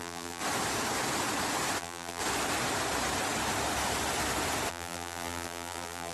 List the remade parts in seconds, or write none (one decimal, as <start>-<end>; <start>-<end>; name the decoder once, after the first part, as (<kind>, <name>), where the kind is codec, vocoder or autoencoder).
0.0-0.4 (vocoder, BigVGAN v2); 1.8-2.2; 4.7-6.1